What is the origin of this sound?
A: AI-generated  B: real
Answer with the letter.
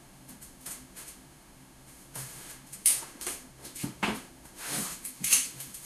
A